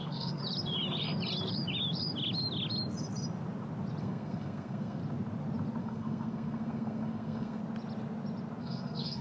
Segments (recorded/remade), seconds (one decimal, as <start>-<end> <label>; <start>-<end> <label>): 0.0-0.4 remade; 0.4-4.0 recorded; 4.0-5.0 remade; 5.0-5.8 recorded; 5.8-7.6 remade; 7.6-8.6 recorded; 8.6-9.2 remade